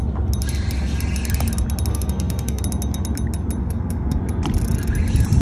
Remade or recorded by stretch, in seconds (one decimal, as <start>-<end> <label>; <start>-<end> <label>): 0.0-1.9 recorded; 1.9-2.6 remade; 2.6-3.6 recorded; 3.6-4.2 remade; 4.2-5.4 recorded

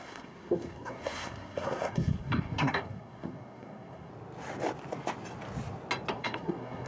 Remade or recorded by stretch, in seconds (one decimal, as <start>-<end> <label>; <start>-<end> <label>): 0.0-4.1 remade; 4.1-6.1 recorded; 6.1-6.9 remade

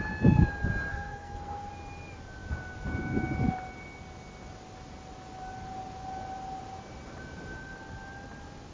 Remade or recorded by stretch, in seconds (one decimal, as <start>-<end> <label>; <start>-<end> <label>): 0.0-0.9 recorded; 0.9-1.7 remade; 1.7-8.7 recorded

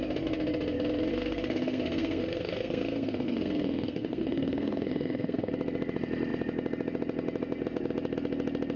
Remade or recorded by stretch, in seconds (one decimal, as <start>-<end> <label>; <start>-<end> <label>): 0.0-1.1 recorded; 1.1-5.5 remade; 5.5-8.8 recorded

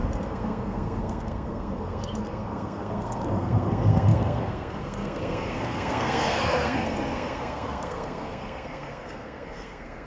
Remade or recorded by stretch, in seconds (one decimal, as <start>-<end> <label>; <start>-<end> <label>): 0.0-10.1 remade